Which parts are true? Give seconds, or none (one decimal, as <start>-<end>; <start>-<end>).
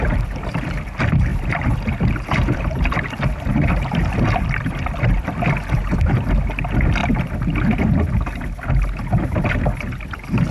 0.0-1.3; 5.4-10.5